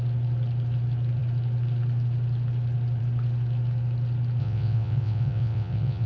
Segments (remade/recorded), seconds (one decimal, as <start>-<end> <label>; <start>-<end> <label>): 0.0-4.4 recorded; 4.4-6.1 remade